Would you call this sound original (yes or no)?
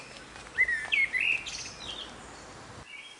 yes